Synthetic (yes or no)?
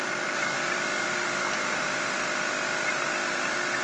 no